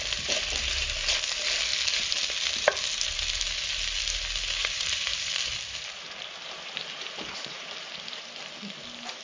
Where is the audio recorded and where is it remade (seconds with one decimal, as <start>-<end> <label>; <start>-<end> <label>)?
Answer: 0.0-1.7 recorded; 1.7-2.2 remade; 2.2-4.6 recorded; 4.6-8.3 remade; 8.3-9.2 recorded